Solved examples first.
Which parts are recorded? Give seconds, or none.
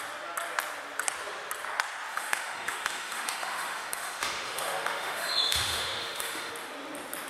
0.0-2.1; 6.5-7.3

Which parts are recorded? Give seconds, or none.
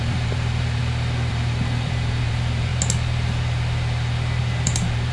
0.8-1.3; 2.7-4.4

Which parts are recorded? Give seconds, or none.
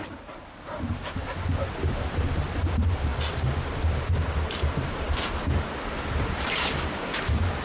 1.2-2.6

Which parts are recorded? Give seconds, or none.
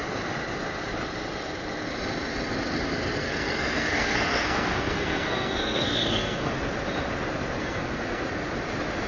0.0-3.2; 6.5-7.6; 8.2-9.1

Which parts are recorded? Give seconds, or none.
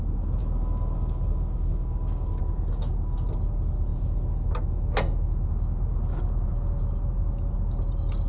0.0-0.4; 2.4-8.3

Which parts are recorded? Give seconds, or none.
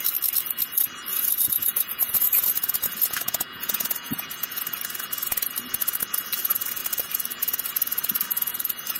0.0-1.1; 4.6-9.0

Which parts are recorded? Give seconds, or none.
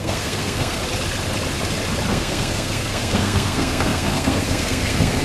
0.8-2.1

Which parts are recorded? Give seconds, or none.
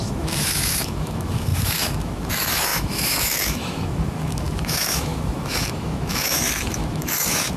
none